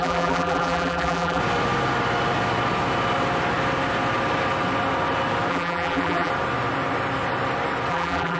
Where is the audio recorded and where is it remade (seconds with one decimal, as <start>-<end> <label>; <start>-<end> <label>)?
0.0-1.4 remade; 1.4-5.5 recorded; 5.5-6.3 remade; 6.3-7.9 recorded; 7.9-8.4 remade